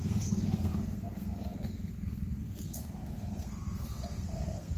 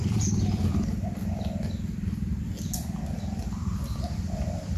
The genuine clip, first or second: second